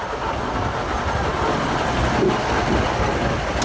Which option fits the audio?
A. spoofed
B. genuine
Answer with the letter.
B